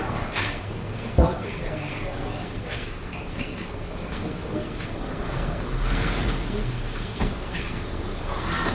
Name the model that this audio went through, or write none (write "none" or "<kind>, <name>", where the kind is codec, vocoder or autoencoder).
codec, SNAC